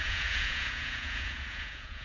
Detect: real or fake fake